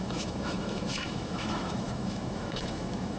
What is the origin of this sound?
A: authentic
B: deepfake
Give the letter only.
B